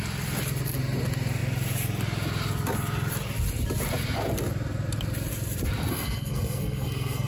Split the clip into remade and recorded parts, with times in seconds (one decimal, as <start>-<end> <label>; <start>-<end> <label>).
0.0-5.9 recorded; 5.9-7.3 remade